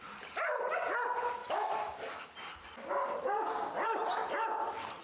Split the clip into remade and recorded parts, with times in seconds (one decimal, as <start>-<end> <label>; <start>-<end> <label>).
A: 0.0-1.4 recorded; 1.4-2.3 remade; 2.3-5.0 recorded

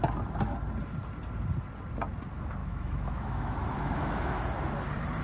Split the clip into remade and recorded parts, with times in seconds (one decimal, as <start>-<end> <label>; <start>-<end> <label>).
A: 0.0-2.6 recorded; 2.6-4.4 remade; 4.4-5.2 recorded

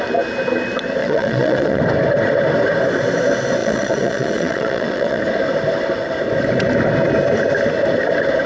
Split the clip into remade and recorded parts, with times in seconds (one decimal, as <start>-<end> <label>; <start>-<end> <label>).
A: 0.0-1.0 recorded; 1.0-1.8 remade; 1.8-3.6 recorded; 3.6-5.2 remade; 5.2-8.5 recorded